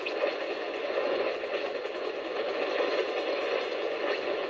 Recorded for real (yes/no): no